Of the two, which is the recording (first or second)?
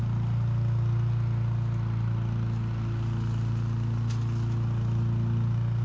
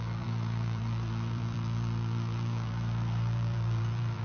first